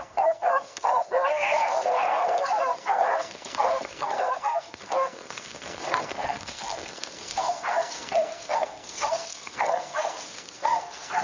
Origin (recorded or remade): remade